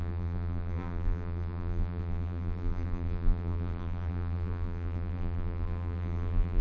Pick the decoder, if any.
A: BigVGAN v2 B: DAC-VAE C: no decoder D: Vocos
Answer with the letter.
A